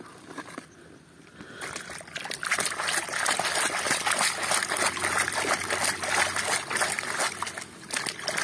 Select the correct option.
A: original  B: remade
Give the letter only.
A